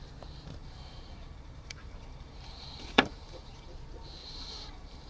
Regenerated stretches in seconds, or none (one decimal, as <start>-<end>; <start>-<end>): 0.6-3.7; 4.2-5.1